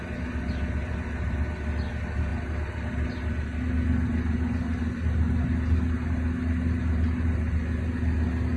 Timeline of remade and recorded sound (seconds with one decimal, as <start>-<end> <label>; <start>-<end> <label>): 0.0-8.6 recorded